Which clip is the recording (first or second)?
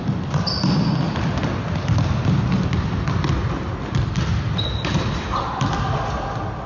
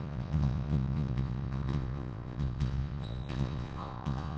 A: first